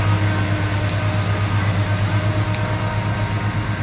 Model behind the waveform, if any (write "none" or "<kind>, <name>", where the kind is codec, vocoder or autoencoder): none